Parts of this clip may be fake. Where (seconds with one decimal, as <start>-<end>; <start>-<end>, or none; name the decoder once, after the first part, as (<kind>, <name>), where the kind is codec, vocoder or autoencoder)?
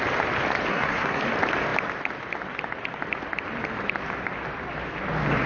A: 0.7-1.2 (codec, SNAC)